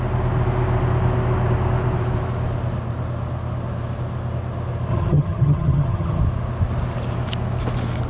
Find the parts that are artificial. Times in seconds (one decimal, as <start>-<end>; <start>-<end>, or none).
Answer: 4.9-6.2